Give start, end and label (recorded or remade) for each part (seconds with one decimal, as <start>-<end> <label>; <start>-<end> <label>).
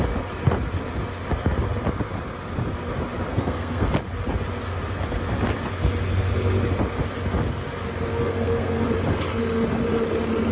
0.0-3.3 recorded; 3.3-3.9 remade; 3.9-8.1 recorded; 8.1-8.8 remade; 8.8-10.5 recorded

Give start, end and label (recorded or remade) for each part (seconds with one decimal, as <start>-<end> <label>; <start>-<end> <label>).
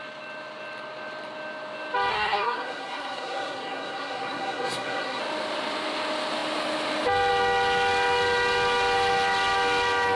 0.0-2.1 recorded; 2.1-5.2 remade; 5.2-10.1 recorded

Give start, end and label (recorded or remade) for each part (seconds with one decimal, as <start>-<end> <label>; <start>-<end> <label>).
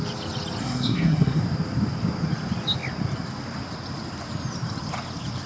0.0-0.6 recorded; 0.6-1.4 remade; 1.4-5.5 recorded